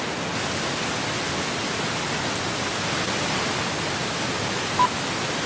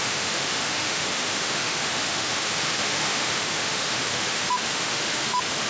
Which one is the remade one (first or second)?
second